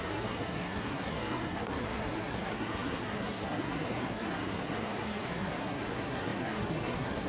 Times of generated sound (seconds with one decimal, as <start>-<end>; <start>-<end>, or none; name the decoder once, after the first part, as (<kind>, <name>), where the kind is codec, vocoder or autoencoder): 0.0-7.3 (codec, SNAC)